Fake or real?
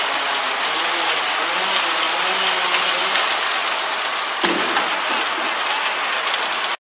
real